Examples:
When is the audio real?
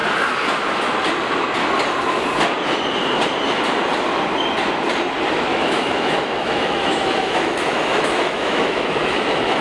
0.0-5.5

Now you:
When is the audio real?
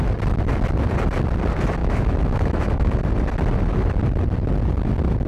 0.0-1.8; 3.0-5.3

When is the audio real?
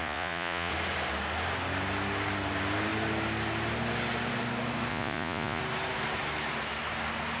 0.7-4.9; 5.6-7.4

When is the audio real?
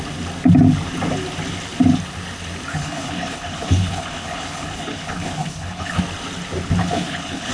0.0-2.7; 6.0-6.8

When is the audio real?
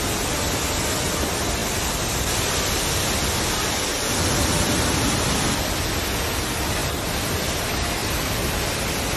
0.0-6.8; 7.3-8.0; 8.7-9.2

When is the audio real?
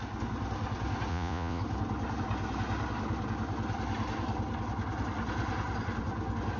0.0-1.1; 1.6-6.6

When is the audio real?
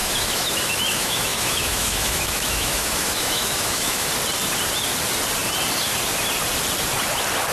4.1-7.5